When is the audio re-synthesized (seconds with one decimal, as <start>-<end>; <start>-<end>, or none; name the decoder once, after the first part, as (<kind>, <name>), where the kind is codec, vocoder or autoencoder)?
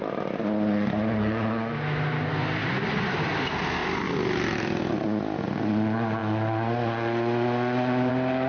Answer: none